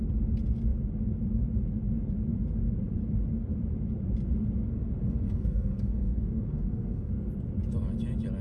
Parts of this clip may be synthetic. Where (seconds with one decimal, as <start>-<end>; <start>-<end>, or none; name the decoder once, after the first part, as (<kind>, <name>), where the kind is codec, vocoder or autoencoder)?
4.7-7.1 (codec, SNAC)